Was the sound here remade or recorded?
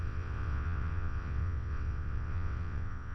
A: remade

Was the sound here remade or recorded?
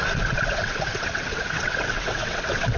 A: remade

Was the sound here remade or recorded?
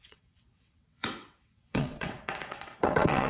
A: remade